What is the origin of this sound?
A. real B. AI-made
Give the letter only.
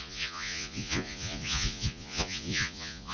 B